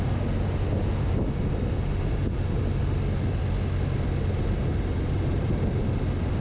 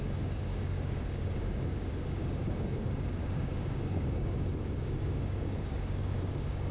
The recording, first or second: first